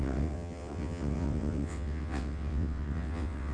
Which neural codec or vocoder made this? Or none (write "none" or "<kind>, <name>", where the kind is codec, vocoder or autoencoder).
vocoder, WaveNeXt